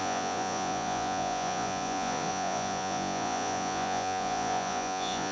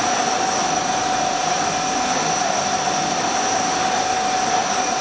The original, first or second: second